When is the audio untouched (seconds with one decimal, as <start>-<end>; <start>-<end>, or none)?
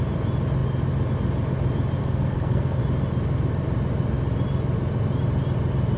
0.0-2.0; 2.8-6.0